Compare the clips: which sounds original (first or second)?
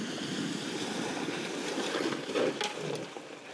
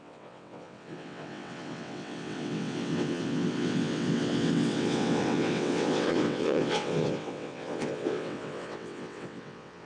first